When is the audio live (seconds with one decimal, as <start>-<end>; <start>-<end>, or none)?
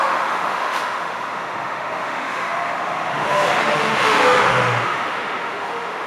none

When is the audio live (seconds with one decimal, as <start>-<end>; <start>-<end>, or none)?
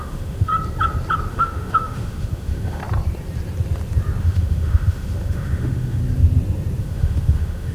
0.5-1.3; 2.8-4.2; 6.0-6.8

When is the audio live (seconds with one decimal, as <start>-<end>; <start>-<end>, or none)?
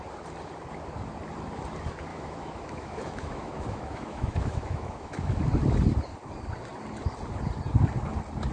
0.0-2.1; 5.4-8.5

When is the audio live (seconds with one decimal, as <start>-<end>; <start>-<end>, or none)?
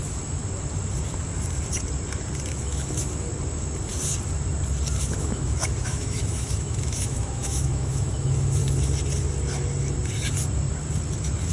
0.4-2.5; 3.3-5.2; 8.6-11.5